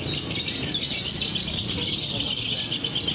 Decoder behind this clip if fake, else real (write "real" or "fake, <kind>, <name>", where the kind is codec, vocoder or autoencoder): real